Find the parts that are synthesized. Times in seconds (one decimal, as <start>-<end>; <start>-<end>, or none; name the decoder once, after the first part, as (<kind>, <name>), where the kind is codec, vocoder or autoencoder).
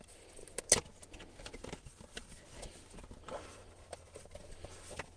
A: 0.0-0.4 (vocoder, BigVGAN v2); 3.5-5.2